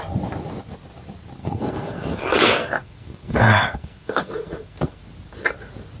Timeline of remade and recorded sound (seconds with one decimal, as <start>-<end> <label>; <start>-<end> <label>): 0.0-1.4 recorded; 1.4-5.0 remade; 5.0-6.0 recorded